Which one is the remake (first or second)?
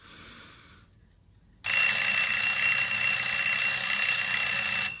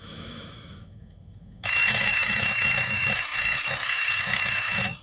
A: second